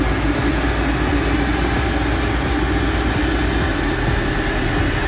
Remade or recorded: recorded